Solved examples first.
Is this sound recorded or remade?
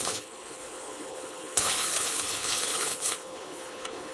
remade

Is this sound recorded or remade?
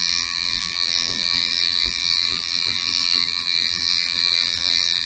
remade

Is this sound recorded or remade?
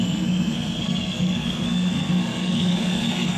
remade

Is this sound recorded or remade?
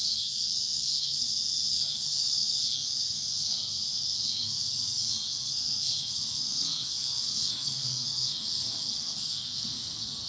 remade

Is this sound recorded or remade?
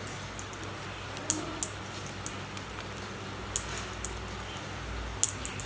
recorded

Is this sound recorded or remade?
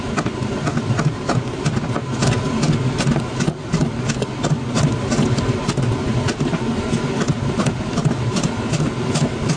recorded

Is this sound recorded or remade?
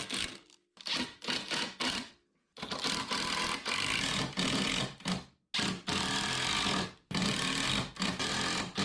recorded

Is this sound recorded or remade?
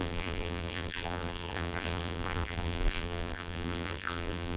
remade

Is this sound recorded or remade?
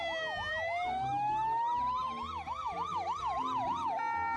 recorded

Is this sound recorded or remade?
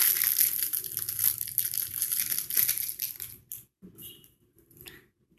recorded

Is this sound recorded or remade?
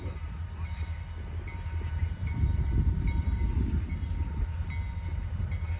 recorded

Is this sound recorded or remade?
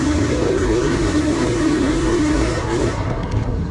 remade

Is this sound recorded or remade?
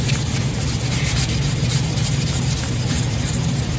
remade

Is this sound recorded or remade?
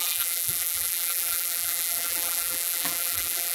remade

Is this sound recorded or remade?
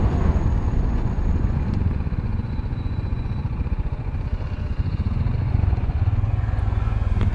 remade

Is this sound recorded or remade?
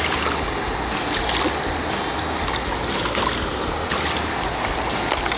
recorded